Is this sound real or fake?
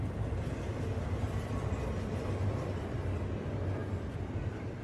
real